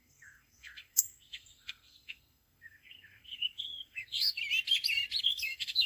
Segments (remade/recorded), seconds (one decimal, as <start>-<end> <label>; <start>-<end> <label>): 0.0-4.4 remade; 4.4-5.2 recorded; 5.2-5.9 remade